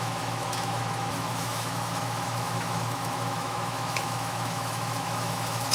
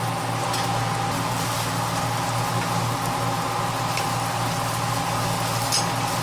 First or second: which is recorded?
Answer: second